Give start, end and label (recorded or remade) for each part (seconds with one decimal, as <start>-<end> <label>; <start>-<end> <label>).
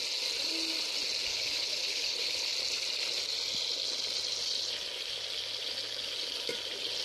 0.0-1.3 recorded; 1.3-2.5 remade; 2.5-7.0 recorded